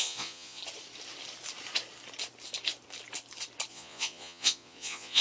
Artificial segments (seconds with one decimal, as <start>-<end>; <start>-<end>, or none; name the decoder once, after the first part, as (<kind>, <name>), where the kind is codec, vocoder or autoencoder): 0.0-0.6 (vocoder, Vocos); 3.7-5.2